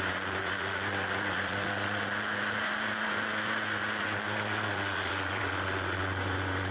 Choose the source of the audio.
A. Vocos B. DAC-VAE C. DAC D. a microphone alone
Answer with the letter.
A